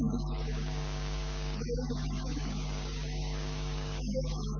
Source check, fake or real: fake